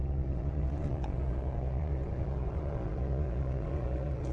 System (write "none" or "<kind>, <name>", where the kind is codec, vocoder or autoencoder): vocoder, Vocos